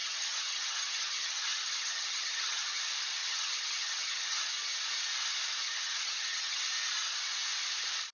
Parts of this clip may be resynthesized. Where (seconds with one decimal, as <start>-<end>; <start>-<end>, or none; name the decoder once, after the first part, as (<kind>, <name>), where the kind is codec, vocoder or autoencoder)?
0.0-2.8 (vocoder, HiFi-GAN); 3.2-4.4; 5.6-6.6